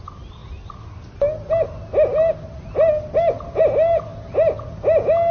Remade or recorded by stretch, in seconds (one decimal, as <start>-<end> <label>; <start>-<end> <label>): 0.0-5.3 recorded

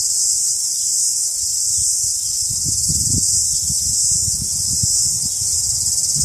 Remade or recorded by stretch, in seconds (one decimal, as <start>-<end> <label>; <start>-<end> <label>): 0.0-6.2 recorded

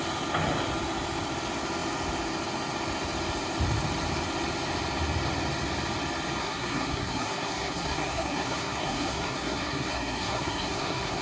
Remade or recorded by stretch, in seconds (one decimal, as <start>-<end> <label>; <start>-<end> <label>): 0.0-6.4 recorded; 6.4-11.2 remade